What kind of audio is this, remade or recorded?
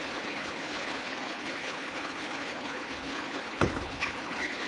remade